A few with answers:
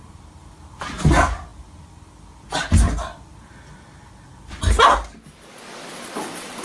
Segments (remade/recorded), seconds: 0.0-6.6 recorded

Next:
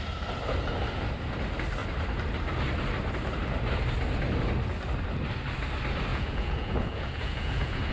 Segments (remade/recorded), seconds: 0.0-6.1 recorded; 6.1-7.9 remade